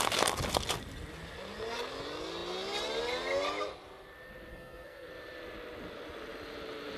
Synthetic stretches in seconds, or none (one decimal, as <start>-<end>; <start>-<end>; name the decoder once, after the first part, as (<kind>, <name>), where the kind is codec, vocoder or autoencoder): 4.5-5.1 (codec, SNAC)